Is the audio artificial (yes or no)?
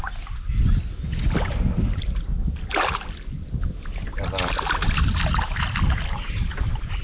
no